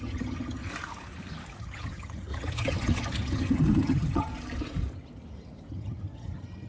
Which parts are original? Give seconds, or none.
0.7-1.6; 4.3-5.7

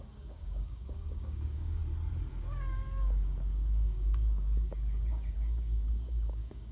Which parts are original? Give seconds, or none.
1.8-2.3

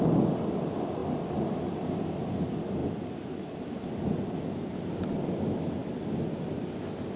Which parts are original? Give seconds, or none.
0.0-7.2

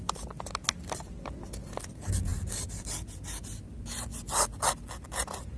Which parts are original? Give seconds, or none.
0.0-5.6

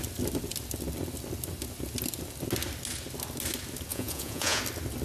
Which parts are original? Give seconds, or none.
0.0-3.9; 4.6-5.0

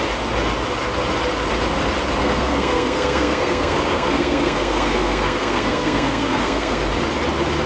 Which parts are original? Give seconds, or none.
0.0-2.2; 6.8-7.7

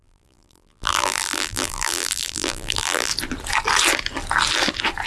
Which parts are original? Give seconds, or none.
3.1-5.1